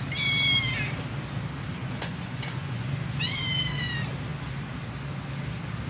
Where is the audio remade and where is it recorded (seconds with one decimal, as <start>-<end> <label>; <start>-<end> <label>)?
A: 0.0-1.8 recorded; 1.8-2.9 remade; 2.9-5.9 recorded

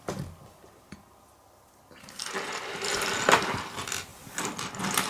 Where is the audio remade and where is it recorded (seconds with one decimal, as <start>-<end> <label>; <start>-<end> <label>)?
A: 0.0-5.1 recorded

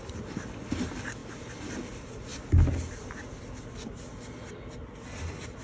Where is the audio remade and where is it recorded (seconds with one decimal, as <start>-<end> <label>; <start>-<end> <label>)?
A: 0.0-5.6 recorded

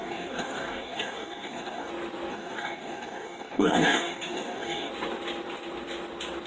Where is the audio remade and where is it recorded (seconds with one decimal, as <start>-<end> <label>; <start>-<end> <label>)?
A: 0.0-1.9 remade; 1.9-2.3 recorded; 2.3-4.9 remade; 4.9-6.5 recorded

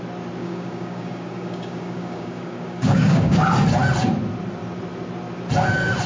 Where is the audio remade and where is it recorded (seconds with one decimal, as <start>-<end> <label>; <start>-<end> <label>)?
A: 0.0-0.4 recorded; 0.4-3.4 remade; 3.4-6.1 recorded

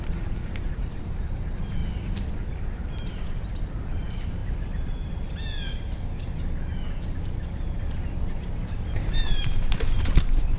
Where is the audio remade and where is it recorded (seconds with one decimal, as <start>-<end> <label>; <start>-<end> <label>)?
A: 0.0-1.8 remade; 1.8-2.3 recorded; 2.3-4.4 remade; 4.4-9.0 recorded; 9.0-10.6 remade

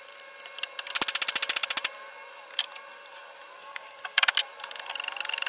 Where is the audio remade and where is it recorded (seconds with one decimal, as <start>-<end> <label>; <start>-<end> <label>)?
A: 0.0-3.6 recorded; 3.6-4.3 remade; 4.3-5.5 recorded

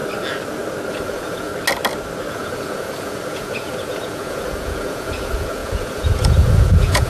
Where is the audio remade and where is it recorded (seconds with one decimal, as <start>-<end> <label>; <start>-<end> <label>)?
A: 0.0-0.9 recorded; 0.9-1.5 remade; 1.5-2.3 recorded; 2.3-7.1 remade